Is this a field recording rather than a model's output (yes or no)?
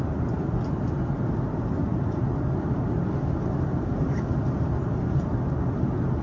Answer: yes